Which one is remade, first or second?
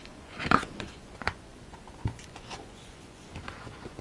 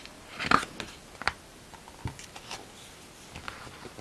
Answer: first